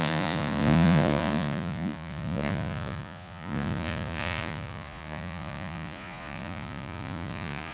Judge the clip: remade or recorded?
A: remade